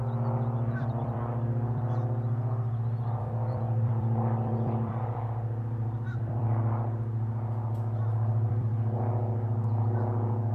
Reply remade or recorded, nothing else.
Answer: remade